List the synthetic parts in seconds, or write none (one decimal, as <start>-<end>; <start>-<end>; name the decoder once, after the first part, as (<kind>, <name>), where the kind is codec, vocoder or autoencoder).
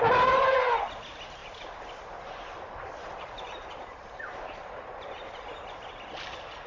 1.4-5.4 (vocoder, BigVGAN v2)